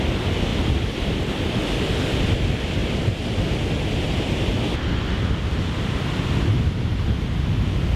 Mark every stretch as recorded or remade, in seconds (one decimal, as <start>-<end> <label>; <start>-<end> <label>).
0.0-0.5 recorded; 0.5-1.3 remade; 1.3-8.0 recorded